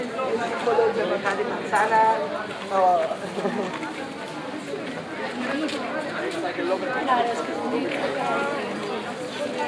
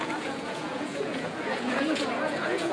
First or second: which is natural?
first